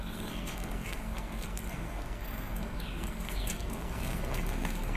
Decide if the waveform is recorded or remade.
remade